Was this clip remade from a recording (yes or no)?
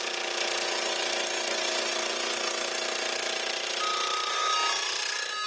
no